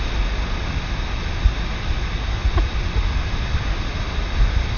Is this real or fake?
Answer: real